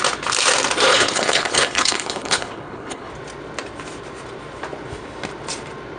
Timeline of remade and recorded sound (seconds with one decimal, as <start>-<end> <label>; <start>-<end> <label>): 0.0-0.9 recorded; 0.9-3.1 remade; 3.1-6.0 recorded